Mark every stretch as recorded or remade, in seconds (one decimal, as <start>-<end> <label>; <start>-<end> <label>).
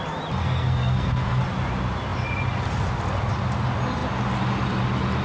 0.0-0.4 recorded; 0.4-1.4 remade; 1.4-5.2 recorded